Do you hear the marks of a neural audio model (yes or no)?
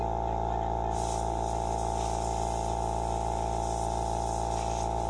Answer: no